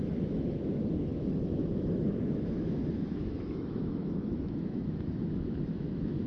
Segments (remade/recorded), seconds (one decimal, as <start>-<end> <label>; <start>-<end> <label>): 0.0-6.3 remade